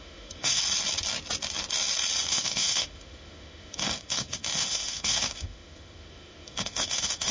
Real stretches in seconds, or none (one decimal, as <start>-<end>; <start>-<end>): 0.6-2.3